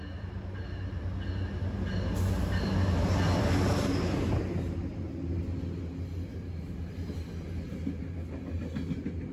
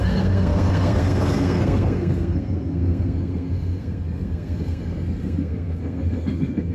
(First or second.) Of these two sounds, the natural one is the first